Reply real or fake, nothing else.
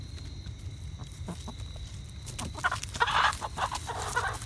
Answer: real